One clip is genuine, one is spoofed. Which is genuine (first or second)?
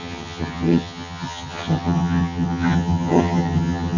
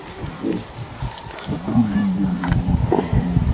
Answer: second